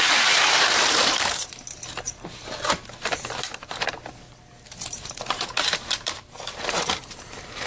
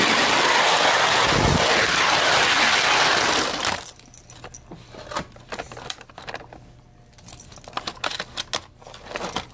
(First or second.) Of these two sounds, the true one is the second